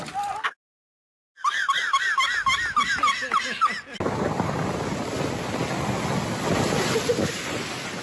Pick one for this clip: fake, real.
real